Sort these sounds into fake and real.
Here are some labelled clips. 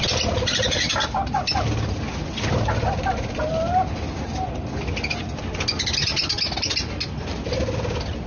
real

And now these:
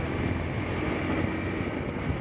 real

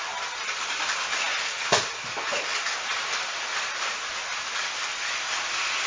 real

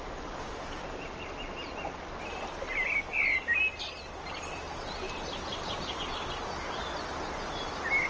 real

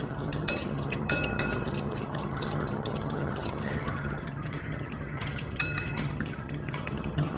fake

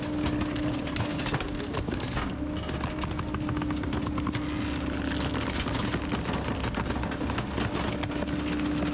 real